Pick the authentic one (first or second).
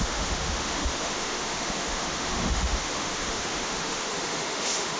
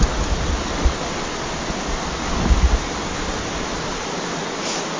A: second